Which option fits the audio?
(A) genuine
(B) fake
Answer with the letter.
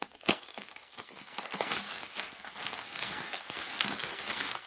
B